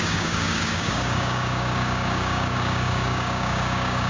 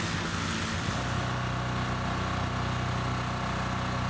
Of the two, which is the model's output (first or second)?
first